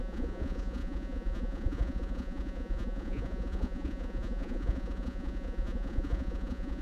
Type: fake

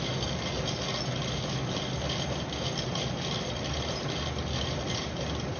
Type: real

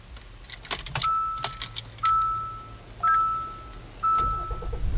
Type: real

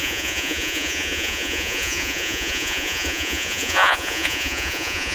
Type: fake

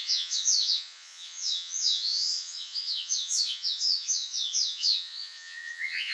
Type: fake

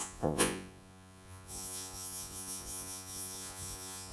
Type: fake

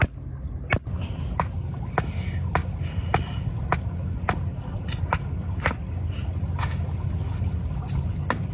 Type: real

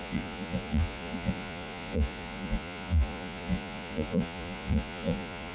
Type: fake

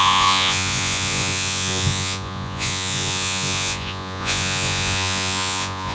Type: fake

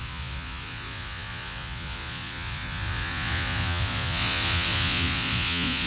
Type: fake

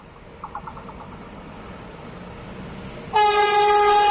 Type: real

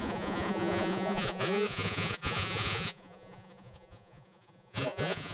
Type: fake